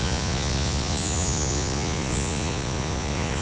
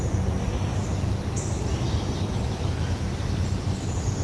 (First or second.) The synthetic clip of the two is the first